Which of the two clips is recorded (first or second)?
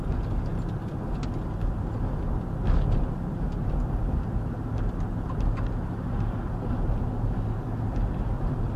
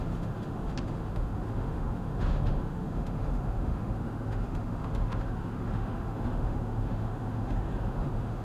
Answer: first